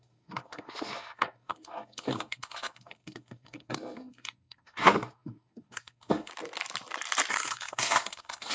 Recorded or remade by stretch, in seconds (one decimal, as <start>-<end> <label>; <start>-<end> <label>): 0.0-6.3 remade; 6.3-7.3 recorded; 7.3-8.5 remade